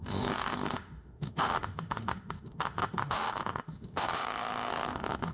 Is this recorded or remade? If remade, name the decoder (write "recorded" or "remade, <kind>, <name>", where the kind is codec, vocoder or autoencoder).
remade, autoencoder, DAC-VAE